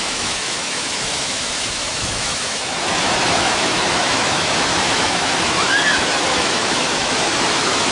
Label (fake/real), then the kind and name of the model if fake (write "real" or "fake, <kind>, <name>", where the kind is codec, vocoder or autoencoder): fake, autoencoder, DAC-VAE